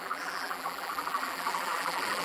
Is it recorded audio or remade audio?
remade